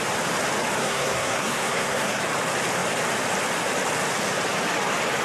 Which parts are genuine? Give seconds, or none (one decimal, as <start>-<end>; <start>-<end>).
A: 0.0-0.8; 2.2-5.2